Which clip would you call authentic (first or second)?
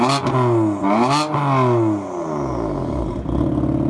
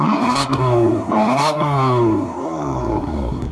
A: first